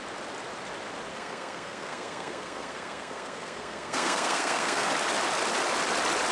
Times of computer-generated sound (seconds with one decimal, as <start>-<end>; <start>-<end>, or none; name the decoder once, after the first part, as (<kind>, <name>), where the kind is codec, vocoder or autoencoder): 1.1-4.9 (codec, SNAC)

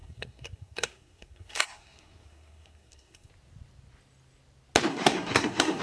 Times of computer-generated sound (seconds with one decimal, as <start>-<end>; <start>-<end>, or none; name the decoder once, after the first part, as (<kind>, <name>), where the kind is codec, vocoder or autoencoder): 0.0-3.3 (codec, SNAC); 4.9-5.8